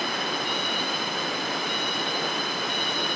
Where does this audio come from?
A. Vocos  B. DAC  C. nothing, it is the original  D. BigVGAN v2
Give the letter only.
C